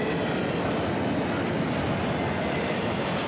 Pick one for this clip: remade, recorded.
recorded